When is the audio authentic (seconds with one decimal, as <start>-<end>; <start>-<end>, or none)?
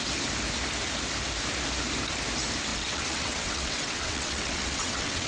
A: 0.0-2.7